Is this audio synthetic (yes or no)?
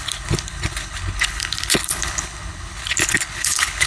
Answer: yes